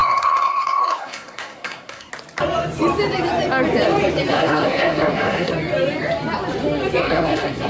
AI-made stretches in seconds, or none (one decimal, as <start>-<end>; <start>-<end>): 0.0-2.1; 4.3-5.5; 7.0-7.7